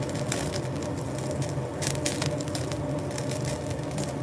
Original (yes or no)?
yes